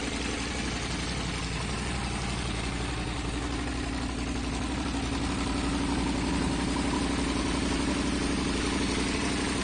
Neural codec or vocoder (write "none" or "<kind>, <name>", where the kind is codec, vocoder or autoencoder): none